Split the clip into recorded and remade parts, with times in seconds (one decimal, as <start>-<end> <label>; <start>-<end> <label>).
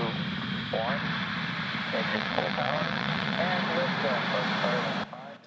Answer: 0.0-2.1 recorded; 2.1-3.4 remade; 3.4-5.5 recorded